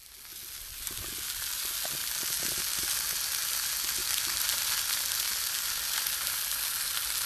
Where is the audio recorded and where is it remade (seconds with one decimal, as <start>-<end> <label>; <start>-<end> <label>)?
0.0-7.3 recorded